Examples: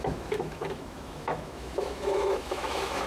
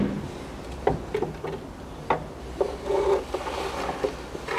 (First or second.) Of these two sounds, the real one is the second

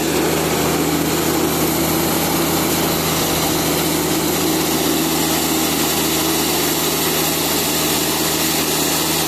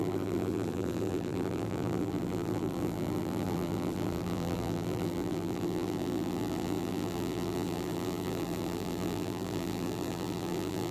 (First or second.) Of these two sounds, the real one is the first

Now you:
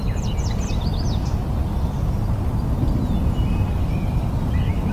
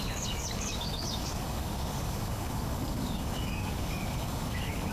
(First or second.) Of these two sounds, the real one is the first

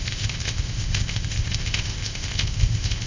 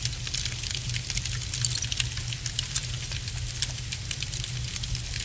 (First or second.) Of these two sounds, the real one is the second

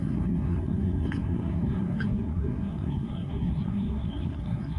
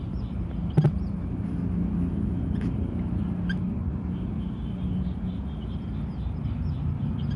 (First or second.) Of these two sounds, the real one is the second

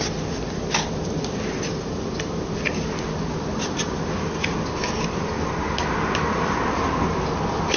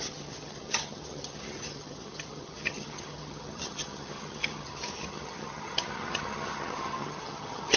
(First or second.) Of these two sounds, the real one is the first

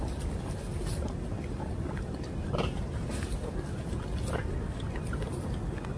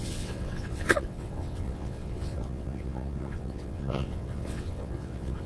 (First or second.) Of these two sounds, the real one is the first